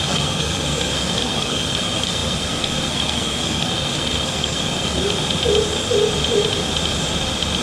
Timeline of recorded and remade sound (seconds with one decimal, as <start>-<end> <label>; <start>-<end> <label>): 0.0-5.0 remade; 5.0-7.6 recorded

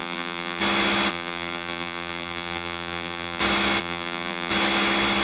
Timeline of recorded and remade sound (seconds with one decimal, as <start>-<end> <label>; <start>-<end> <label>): 0.0-0.6 remade; 0.6-1.1 recorded; 1.1-3.4 remade; 3.4-3.8 recorded; 3.8-4.5 remade; 4.5-5.2 recorded

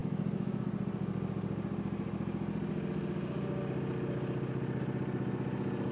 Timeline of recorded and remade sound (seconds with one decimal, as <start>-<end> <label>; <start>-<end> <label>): 0.0-0.6 remade; 0.6-5.9 recorded

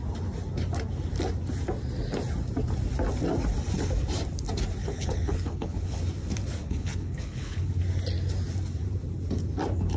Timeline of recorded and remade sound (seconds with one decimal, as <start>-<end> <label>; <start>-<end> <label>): 0.0-4.8 recorded; 4.8-6.0 remade; 6.0-6.6 recorded; 6.6-7.8 remade; 7.8-10.0 recorded

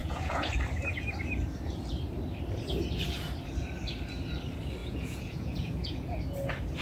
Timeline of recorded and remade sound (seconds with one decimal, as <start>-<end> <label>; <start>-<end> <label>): 0.0-0.5 remade; 0.5-4.8 recorded; 4.8-6.2 remade; 6.2-6.8 recorded

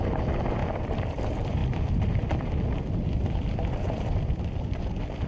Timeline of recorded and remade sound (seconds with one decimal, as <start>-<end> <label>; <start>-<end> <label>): 0.0-0.6 recorded; 0.6-1.2 remade; 1.2-1.6 recorded; 1.6-4.8 remade; 4.8-5.3 recorded

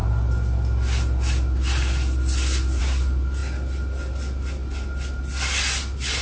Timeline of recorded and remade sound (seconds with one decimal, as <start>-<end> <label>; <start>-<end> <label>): 0.0-6.2 recorded

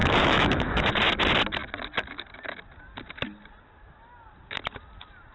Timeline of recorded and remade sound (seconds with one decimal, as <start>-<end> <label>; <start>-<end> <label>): 0.0-0.9 remade; 0.9-5.3 recorded